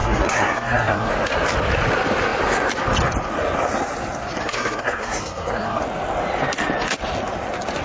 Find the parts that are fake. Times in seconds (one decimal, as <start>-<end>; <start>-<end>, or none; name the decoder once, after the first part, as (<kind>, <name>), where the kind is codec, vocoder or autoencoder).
0.0-1.1 (codec, SNAC); 4.4-5.8